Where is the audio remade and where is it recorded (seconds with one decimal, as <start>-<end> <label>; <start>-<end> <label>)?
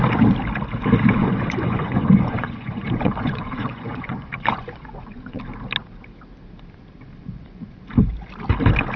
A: 0.0-1.2 recorded; 1.2-5.4 remade; 5.4-7.2 recorded; 7.2-7.8 remade; 7.8-9.0 recorded